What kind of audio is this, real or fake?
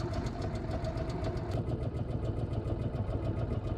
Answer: real